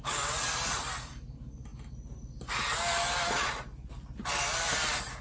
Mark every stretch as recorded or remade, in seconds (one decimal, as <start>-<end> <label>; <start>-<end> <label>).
0.0-5.2 recorded